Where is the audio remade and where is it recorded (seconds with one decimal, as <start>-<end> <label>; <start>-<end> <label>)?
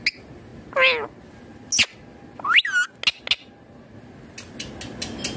0.0-5.4 recorded